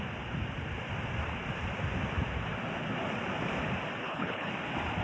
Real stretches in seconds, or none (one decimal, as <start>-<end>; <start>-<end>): 0.0-4.0; 4.5-5.0